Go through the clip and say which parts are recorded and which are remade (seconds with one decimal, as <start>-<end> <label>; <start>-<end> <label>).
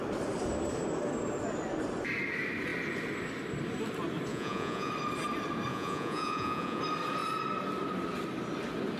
0.0-4.3 recorded; 4.3-4.9 remade; 4.9-5.7 recorded; 5.7-6.8 remade; 6.8-9.0 recorded